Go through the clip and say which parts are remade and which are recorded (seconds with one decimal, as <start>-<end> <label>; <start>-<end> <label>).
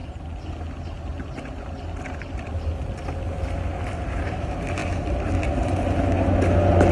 0.0-6.9 recorded